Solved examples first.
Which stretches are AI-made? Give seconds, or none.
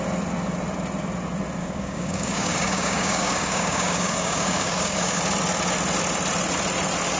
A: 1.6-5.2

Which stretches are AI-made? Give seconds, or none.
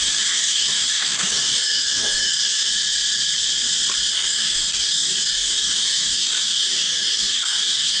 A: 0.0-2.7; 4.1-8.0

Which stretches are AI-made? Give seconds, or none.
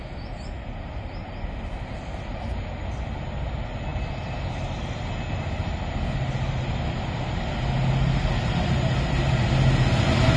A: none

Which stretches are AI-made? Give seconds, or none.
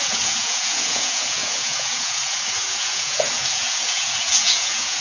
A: 0.0-5.0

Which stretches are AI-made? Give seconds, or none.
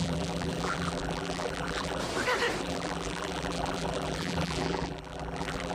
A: 0.0-2.0; 2.6-5.7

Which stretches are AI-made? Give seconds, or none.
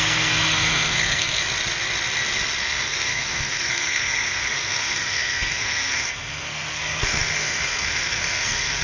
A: 0.0-1.4; 2.6-8.8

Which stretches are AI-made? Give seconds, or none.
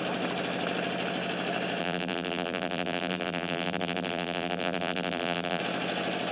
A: 1.8-5.6